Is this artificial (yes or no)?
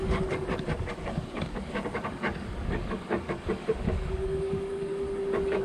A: yes